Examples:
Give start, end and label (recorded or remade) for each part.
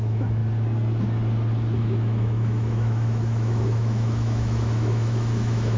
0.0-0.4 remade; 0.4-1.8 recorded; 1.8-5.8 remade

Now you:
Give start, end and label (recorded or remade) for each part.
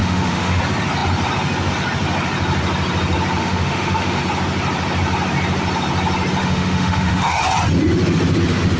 0.0-0.6 remade; 0.6-3.4 recorded; 3.4-4.2 remade; 4.2-6.4 recorded; 6.4-7.4 remade; 7.4-8.8 recorded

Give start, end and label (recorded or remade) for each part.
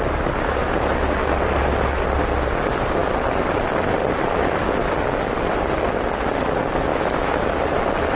0.0-6.9 recorded; 6.9-7.4 remade; 7.4-8.2 recorded